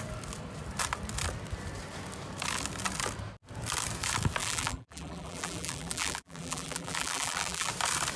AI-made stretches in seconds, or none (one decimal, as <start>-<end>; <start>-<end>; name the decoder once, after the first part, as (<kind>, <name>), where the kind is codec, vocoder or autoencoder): 4.4-7.7 (vocoder, BigVGAN v2)